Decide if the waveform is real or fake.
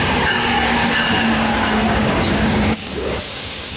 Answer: fake